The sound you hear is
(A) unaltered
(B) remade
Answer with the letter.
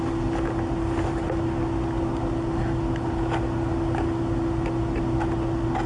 A